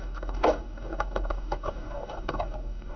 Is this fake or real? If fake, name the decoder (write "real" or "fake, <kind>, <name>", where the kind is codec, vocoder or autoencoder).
fake, codec, DAC